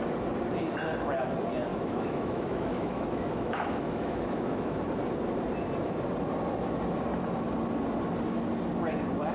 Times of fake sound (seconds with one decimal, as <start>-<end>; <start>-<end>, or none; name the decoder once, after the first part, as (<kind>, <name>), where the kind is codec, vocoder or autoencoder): 1.7-4.7 (autoencoder, DAC-VAE)